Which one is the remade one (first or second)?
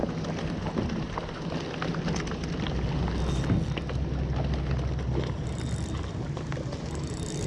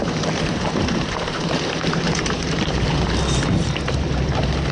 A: second